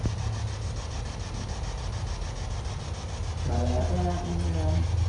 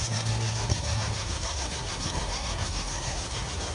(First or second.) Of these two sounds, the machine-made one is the second